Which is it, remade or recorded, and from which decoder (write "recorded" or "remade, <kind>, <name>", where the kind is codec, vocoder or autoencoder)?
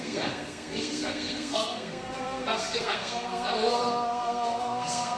remade, codec, SNAC